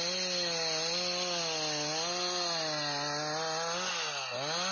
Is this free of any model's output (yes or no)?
yes